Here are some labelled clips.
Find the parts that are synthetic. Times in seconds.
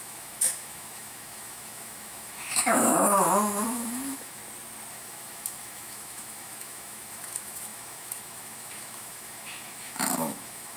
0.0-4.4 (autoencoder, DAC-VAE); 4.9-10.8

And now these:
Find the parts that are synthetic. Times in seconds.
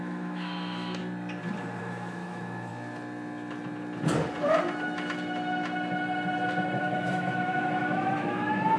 0.0-1.0 (autoencoder, DAC-VAE); 1.8-2.7; 6.8-8.8